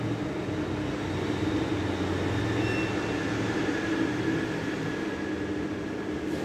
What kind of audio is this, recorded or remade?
recorded